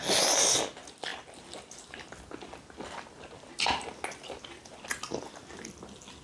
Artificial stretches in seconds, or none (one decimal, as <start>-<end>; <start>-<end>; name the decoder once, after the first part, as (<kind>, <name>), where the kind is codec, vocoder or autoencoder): none

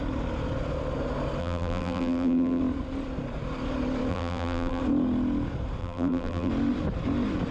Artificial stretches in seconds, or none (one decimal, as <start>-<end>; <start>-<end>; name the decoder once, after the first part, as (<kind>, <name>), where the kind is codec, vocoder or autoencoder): 1.4-2.6 (vocoder, BigVGAN v2); 4.1-4.8; 5.8-6.5

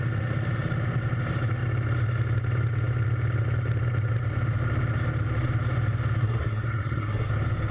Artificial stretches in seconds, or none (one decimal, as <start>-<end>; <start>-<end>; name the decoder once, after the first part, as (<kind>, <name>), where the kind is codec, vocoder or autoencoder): 6.2-7.3 (codec, SNAC)

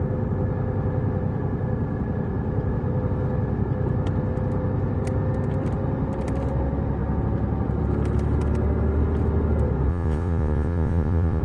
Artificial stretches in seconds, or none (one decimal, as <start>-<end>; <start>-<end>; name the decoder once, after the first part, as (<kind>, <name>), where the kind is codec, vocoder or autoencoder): 9.9-11.4 (vocoder, Vocos)

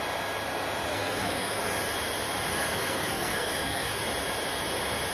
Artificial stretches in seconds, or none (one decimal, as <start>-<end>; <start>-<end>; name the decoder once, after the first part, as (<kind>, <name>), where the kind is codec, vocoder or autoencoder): 0.9-1.6 (codec, SNAC); 2.5-4.0

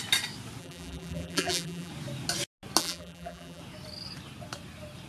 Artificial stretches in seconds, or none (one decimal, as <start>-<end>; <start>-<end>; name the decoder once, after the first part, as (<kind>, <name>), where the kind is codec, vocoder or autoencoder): 0.6-1.9 (vocoder, BigVGAN v2); 2.8-3.6

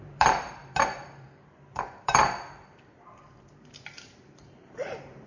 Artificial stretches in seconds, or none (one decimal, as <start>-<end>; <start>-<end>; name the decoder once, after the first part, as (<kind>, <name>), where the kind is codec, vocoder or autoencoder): 0.0-5.3 (vocoder, BigVGAN v2)

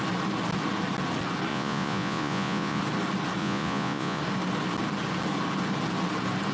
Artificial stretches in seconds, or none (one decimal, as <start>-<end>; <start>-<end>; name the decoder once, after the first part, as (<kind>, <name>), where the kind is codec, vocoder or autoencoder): 1.5-2.8 (vocoder, Vocos); 3.4-4.2